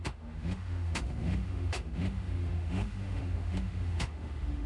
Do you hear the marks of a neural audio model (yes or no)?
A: yes